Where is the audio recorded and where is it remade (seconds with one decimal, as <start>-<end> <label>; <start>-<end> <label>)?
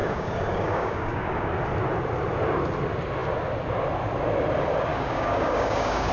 0.0-1.5 remade; 1.5-4.9 recorded; 4.9-6.1 remade